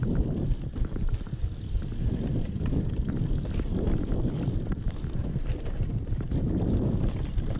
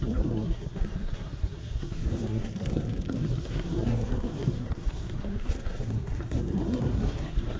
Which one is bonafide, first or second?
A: first